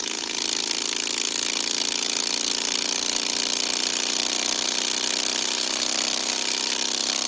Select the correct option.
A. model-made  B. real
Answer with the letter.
B